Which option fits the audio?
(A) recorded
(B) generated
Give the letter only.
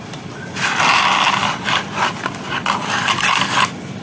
A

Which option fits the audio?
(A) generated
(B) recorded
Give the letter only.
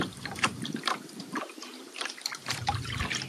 A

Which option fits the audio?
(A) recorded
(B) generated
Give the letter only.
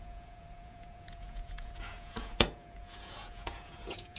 B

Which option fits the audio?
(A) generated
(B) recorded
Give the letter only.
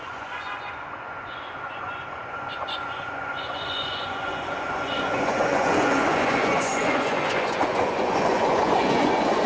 A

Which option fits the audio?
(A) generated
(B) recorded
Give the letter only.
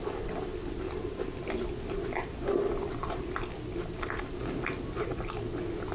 B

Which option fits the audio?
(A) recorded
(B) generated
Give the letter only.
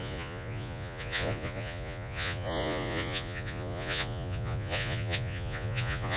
B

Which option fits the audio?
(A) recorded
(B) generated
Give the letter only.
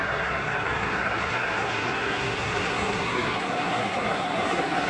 B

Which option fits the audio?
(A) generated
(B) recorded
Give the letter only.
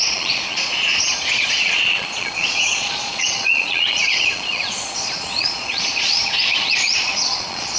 A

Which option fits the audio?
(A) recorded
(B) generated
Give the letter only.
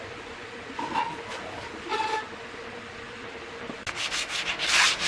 A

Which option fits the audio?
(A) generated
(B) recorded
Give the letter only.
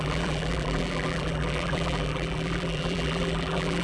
A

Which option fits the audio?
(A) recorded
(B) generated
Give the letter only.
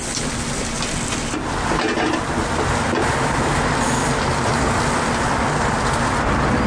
A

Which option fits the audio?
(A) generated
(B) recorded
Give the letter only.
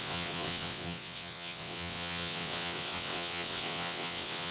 A